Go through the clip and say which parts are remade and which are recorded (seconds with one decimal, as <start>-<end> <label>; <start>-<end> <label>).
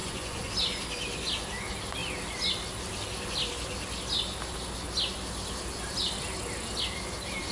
0.0-0.5 remade; 0.5-7.5 recorded